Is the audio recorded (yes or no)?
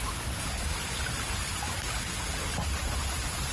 yes